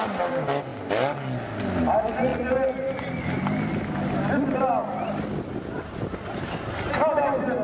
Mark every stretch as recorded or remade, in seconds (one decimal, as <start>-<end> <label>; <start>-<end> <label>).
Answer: 0.0-7.6 recorded